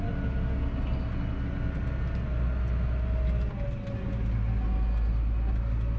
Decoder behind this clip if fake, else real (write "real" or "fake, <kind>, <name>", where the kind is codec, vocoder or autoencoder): real